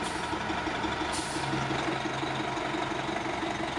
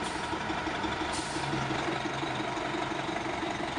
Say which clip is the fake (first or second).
second